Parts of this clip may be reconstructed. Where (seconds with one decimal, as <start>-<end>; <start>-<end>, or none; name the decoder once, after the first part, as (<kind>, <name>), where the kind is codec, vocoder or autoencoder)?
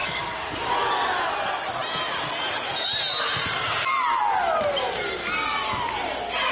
0.0-0.7 (vocoder, BigVGAN v2)